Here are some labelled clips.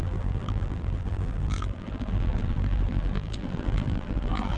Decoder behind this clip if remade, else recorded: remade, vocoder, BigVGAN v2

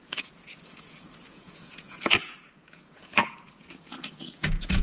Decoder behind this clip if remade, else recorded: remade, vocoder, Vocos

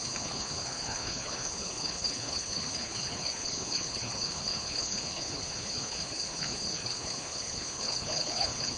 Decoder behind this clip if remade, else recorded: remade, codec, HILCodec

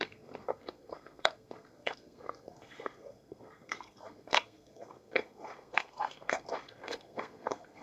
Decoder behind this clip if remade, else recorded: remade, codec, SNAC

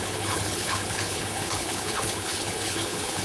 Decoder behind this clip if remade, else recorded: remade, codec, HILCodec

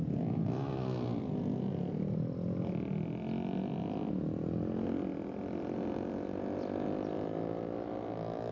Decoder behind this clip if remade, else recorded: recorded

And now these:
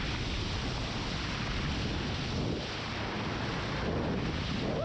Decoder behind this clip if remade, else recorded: recorded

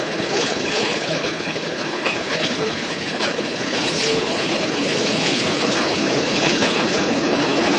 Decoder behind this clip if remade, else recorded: remade, codec, HILCodec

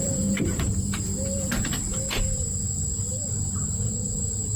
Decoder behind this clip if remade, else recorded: remade, vocoder, BigVGAN v2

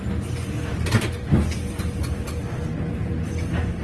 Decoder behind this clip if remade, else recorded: recorded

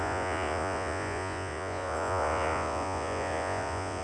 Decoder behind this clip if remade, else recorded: remade, vocoder, Vocos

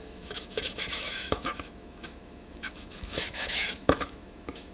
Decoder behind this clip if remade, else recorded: remade, autoencoder, DAC-VAE